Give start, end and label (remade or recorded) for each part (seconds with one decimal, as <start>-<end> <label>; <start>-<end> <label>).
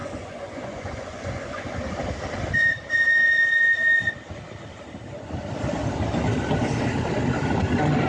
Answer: 0.0-1.7 remade; 1.7-8.1 recorded